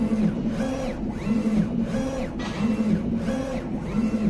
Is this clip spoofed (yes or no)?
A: no